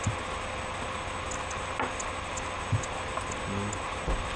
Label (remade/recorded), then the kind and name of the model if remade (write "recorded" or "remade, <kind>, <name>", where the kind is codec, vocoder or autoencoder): recorded